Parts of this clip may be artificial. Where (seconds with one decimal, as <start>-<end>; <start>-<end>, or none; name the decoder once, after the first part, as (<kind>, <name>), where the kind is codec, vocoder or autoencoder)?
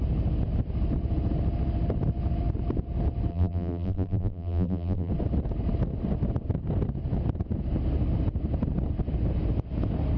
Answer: 3.3-5.1 (vocoder, BigVGAN v2)